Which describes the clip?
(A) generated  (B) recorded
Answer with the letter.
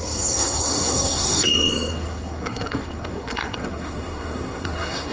A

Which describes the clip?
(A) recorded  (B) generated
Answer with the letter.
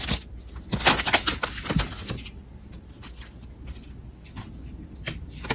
A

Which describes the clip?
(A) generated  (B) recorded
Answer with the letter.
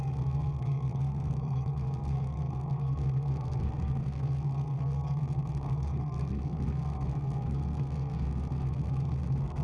A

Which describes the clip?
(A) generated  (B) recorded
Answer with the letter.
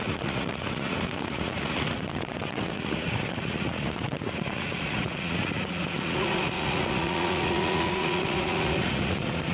A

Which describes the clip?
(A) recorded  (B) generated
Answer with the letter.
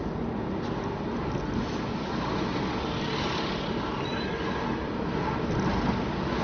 A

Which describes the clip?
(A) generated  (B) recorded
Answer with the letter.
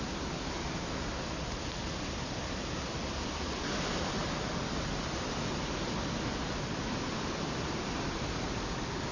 B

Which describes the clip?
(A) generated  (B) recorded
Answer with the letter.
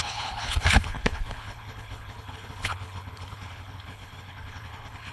A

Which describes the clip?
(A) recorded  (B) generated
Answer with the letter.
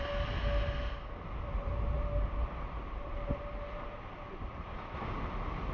A